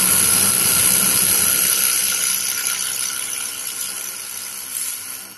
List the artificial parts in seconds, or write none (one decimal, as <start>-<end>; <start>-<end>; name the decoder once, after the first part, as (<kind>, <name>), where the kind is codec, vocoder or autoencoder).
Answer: none